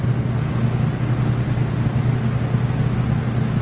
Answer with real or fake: real